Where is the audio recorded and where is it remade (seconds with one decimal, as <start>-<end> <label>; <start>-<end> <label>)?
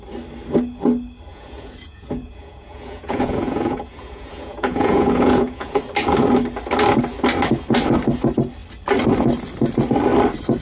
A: 0.0-1.3 recorded; 1.3-5.8 remade; 5.8-10.6 recorded